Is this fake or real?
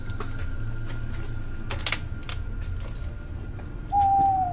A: real